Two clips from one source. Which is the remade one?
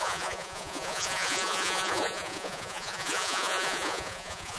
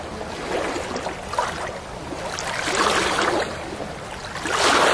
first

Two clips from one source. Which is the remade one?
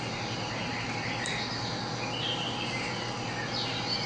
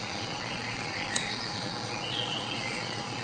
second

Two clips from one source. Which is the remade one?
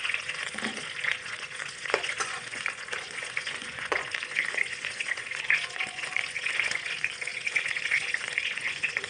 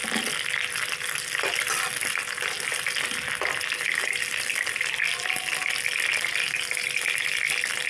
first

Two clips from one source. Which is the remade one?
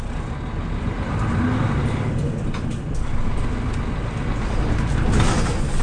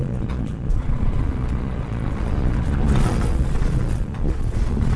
second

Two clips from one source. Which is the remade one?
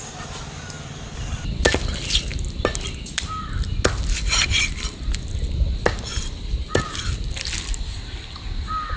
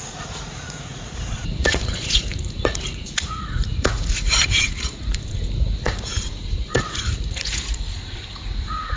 second